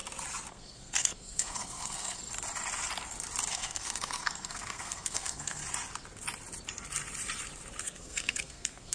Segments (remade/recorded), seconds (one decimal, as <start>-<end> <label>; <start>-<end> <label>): 0.0-0.5 recorded; 0.5-2.2 remade; 2.2-3.5 recorded; 3.5-5.6 remade; 5.6-7.8 recorded; 7.8-8.9 remade